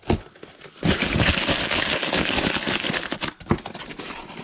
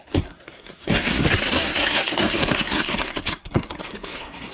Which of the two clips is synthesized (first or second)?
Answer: second